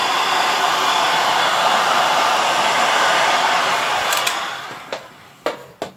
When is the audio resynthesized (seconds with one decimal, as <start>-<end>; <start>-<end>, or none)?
0.0-0.6